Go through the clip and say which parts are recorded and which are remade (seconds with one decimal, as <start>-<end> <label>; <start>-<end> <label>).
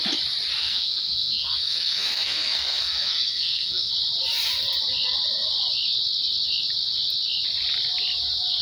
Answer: 0.0-0.6 recorded; 0.6-3.9 remade; 3.9-8.6 recorded